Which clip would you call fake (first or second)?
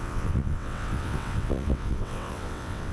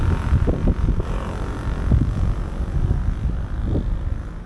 first